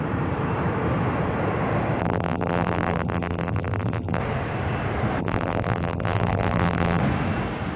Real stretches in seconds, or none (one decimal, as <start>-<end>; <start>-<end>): 0.0-2.0; 4.2-5.2; 7.0-7.8